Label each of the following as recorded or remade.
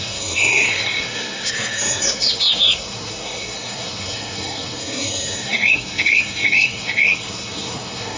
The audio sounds remade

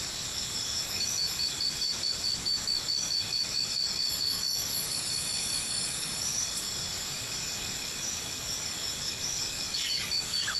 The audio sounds remade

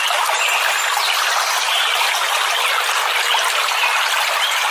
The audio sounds recorded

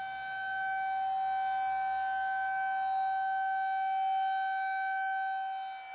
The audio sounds recorded